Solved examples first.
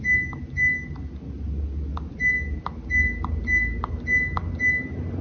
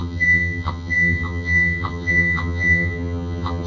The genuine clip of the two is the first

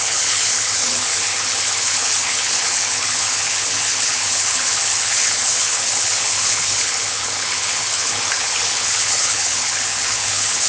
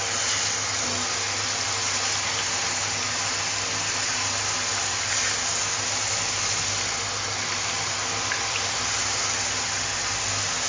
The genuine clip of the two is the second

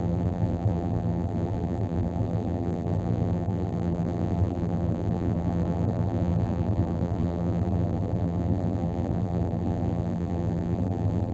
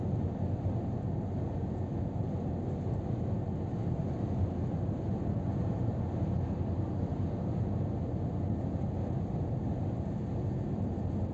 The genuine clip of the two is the second